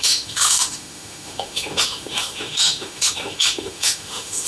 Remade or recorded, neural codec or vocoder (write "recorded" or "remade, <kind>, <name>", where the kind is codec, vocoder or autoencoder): remade, autoencoder, DAC-VAE